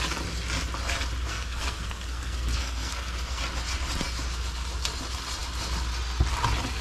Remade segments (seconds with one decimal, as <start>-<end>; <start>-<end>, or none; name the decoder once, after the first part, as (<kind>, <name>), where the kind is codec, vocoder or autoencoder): 1.2-3.4 (codec, SNAC)